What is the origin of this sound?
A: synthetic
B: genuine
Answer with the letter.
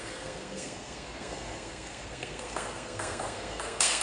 A